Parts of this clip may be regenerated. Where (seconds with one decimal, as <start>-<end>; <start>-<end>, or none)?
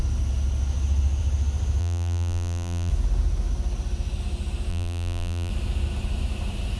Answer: 1.8-2.9; 4.7-5.5